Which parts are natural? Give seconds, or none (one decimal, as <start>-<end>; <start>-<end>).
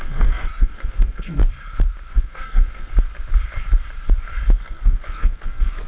1.4-2.1; 2.9-4.6